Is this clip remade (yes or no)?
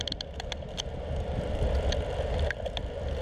no